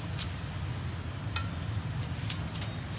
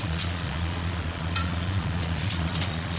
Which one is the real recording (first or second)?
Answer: first